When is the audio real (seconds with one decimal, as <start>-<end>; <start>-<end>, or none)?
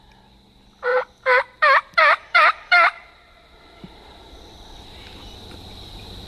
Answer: 0.0-0.9; 4.2-6.3